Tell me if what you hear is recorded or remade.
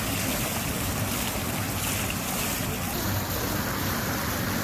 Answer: recorded